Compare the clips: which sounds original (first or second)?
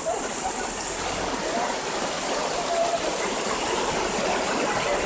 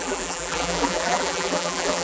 first